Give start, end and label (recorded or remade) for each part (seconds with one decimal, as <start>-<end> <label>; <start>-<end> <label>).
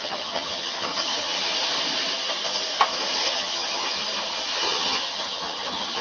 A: 0.0-1.5 remade; 1.5-3.3 recorded; 3.3-4.0 remade; 4.0-4.5 recorded; 4.5-6.0 remade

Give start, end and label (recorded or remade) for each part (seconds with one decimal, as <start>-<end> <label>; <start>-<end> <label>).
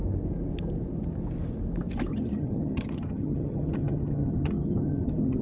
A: 0.0-2.1 recorded; 2.1-5.4 remade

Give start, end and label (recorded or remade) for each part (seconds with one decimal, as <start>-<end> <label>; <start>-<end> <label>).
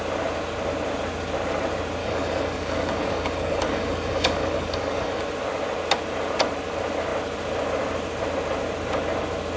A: 0.0-2.0 recorded; 2.0-5.2 remade; 5.2-9.6 recorded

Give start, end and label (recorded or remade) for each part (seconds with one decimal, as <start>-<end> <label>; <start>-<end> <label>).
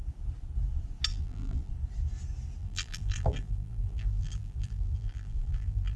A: 0.0-1.1 recorded; 1.1-1.7 remade; 1.7-2.6 recorded; 2.6-6.0 remade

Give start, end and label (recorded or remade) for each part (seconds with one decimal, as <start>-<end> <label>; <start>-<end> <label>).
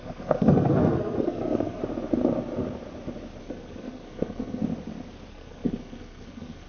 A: 0.0-1.8 remade; 1.8-3.4 recorded; 3.4-4.6 remade; 4.6-5.3 recorded; 5.3-6.7 remade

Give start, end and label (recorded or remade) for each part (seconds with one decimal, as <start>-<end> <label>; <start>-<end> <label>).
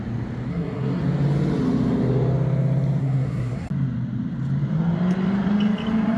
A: 0.0-0.5 recorded; 0.5-1.0 remade; 1.0-3.0 recorded; 3.0-3.7 remade; 3.7-6.2 recorded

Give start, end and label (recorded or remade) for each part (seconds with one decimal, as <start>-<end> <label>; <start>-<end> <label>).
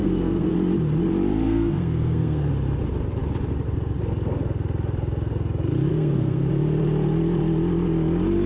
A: 0.0-0.5 remade; 0.5-1.4 recorded; 1.4-2.5 remade; 2.5-5.9 recorded; 5.9-6.5 remade; 6.5-8.5 recorded